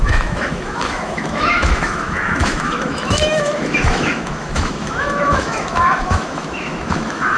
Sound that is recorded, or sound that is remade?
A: remade